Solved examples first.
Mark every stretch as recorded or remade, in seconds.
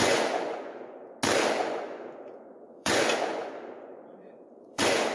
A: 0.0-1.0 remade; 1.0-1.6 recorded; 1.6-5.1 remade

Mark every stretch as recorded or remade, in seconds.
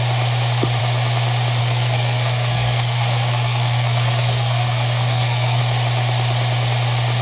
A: 0.0-1.6 recorded; 1.6-5.6 remade; 5.6-7.2 recorded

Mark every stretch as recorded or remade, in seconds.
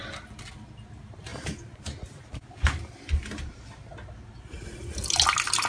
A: 0.0-5.7 recorded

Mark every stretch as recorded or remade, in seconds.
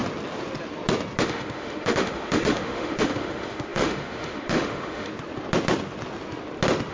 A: 0.0-1.2 recorded; 1.2-5.1 remade; 5.1-6.9 recorded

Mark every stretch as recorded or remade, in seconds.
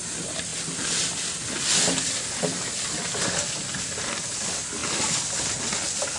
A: 0.0-0.5 recorded; 0.5-1.2 remade; 1.2-6.2 recorded